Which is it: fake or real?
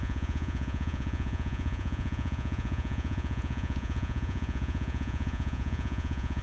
fake